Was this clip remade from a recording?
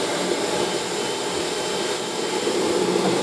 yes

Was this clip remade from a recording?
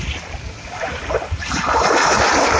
yes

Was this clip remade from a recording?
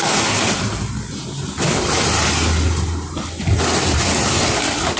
no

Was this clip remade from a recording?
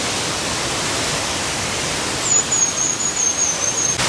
yes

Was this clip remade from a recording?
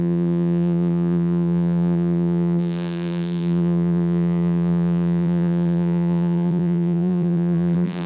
yes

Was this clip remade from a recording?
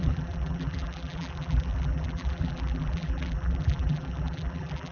yes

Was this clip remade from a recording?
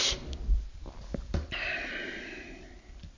no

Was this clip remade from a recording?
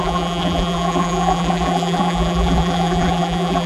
yes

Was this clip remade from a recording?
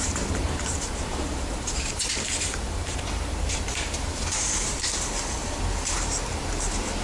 yes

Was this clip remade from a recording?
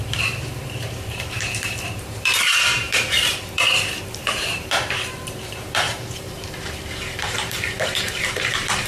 yes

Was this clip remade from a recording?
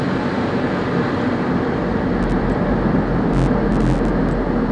no